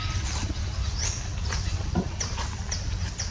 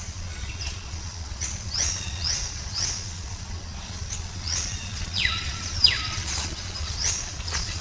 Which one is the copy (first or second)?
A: second